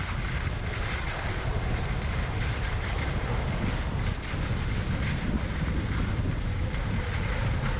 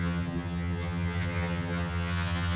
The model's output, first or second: second